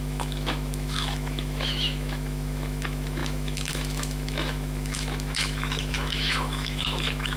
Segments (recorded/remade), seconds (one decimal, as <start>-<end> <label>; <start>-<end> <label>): 0.0-7.4 remade